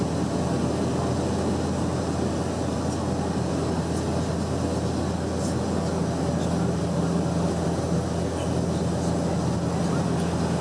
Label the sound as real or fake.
real